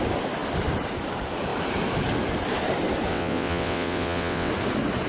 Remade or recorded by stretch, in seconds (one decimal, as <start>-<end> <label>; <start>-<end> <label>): 0.0-3.1 recorded; 3.1-4.5 remade; 4.5-5.1 recorded